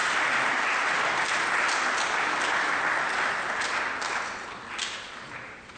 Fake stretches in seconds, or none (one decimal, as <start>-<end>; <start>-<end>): none